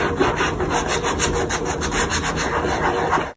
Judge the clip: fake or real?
real